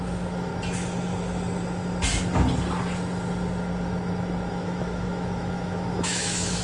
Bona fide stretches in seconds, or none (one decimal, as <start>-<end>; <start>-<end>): 0.5-4.5